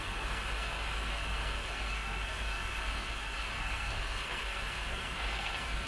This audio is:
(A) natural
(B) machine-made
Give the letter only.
B